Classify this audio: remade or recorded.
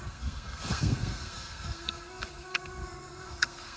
remade